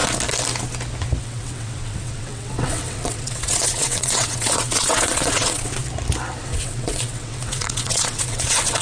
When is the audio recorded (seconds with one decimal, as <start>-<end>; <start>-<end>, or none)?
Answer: 0.0-1.2; 5.8-6.4